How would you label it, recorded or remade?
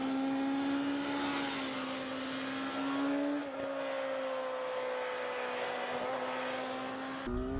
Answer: recorded